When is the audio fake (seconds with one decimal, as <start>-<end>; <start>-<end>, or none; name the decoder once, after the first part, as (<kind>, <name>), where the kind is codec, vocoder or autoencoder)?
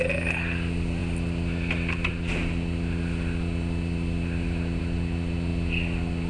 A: none